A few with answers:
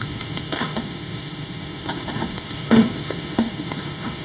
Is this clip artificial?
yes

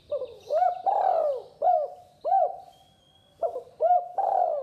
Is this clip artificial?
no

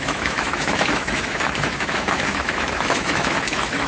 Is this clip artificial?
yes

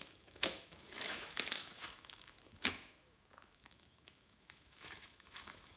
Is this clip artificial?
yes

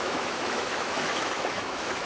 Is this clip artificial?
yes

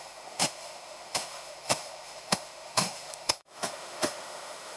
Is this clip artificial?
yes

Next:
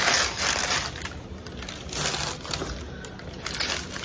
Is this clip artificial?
no